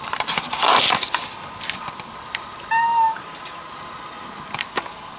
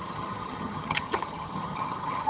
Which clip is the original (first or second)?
first